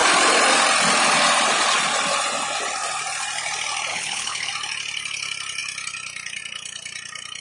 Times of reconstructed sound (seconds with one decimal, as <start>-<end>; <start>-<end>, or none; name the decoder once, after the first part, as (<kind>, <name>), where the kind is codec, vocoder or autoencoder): 3.9-4.5 (codec, HILCodec)